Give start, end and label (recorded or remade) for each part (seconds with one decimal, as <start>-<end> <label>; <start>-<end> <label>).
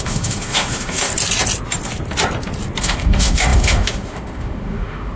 0.0-1.1 remade; 1.1-2.8 recorded; 2.8-5.2 remade